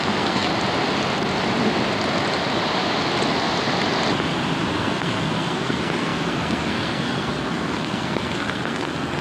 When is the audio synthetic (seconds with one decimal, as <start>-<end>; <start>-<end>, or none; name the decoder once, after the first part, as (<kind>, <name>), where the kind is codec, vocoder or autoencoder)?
0.0-0.5 (codec, SNAC); 4.7-9.2

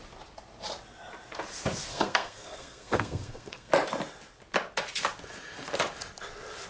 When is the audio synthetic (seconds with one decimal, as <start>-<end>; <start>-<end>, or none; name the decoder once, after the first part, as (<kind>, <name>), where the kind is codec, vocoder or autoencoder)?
1.9-3.7 (codec, SNAC)

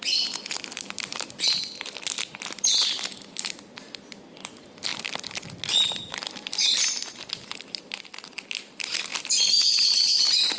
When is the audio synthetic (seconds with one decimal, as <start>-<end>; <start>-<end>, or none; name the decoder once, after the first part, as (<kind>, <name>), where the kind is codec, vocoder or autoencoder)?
none

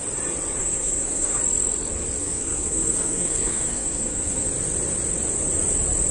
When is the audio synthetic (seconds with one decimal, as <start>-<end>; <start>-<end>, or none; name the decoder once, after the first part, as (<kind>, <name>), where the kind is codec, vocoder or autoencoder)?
0.6-1.4 (codec, SNAC); 2.2-4.5